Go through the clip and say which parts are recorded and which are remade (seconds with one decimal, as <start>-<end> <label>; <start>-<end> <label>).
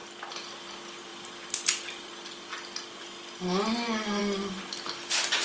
0.0-0.6 remade; 0.6-1.1 recorded; 1.1-2.1 remade; 2.1-5.4 recorded